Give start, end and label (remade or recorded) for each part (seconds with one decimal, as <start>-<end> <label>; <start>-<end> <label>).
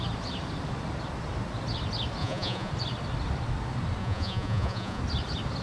0.0-2.2 recorded; 2.2-2.7 remade; 2.7-4.0 recorded; 4.0-5.0 remade; 5.0-5.6 recorded